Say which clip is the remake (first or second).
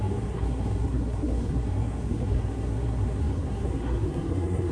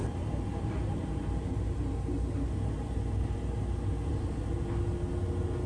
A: first